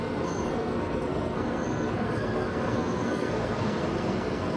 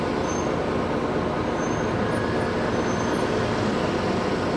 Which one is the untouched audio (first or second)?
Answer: second